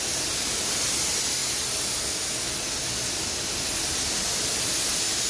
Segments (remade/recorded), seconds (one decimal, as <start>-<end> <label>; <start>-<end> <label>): 0.0-1.4 remade; 1.4-4.2 recorded; 4.2-5.3 remade